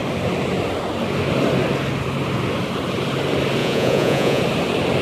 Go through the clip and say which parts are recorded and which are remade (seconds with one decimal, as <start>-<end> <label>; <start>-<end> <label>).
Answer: 0.0-3.6 recorded; 3.6-4.4 remade; 4.4-5.0 recorded